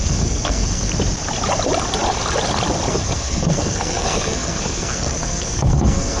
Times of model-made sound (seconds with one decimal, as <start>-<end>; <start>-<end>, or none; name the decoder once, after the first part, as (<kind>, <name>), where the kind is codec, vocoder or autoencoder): 0.0-0.9 (codec, SNAC); 2.9-6.2